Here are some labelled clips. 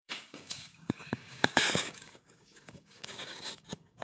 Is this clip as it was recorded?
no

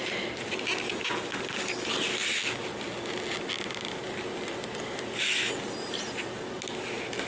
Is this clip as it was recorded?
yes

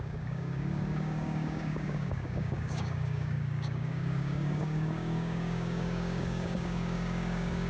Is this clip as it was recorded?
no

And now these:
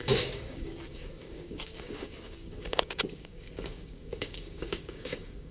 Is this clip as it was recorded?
no